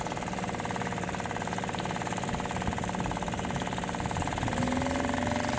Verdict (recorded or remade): recorded